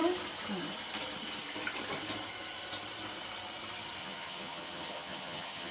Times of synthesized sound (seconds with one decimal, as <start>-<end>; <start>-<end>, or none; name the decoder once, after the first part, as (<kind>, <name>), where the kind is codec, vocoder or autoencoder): 4.0-5.7 (vocoder, HiFi-GAN)